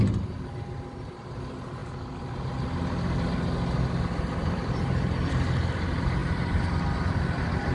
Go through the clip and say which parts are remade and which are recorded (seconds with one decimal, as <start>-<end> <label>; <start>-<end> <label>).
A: 0.0-6.2 recorded; 6.2-6.8 remade; 6.8-7.7 recorded

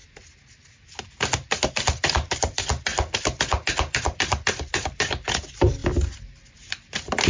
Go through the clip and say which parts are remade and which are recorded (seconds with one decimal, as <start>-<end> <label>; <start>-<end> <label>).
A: 0.0-1.7 recorded; 1.7-5.8 remade; 5.8-6.5 recorded; 6.5-7.3 remade

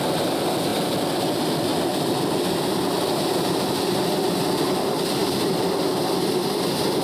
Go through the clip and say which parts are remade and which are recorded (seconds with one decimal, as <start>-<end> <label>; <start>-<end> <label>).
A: 0.0-5.2 recorded; 5.2-5.8 remade; 5.8-7.0 recorded

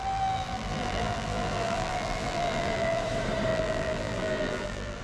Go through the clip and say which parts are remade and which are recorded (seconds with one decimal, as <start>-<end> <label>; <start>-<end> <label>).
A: 0.0-3.0 remade; 3.0-3.5 recorded; 3.5-5.0 remade

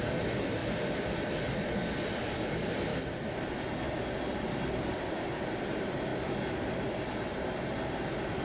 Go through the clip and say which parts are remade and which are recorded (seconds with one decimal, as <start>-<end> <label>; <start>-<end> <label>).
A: 0.0-2.9 recorded; 2.9-3.5 remade; 3.5-8.4 recorded